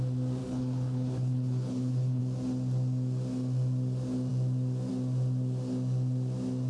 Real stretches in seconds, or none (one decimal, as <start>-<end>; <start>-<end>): 0.0-0.4; 2.2-6.7